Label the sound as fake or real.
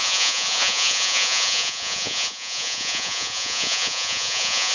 fake